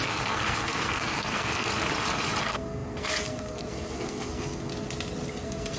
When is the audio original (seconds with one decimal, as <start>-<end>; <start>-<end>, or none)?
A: 1.7-2.4; 4.7-5.3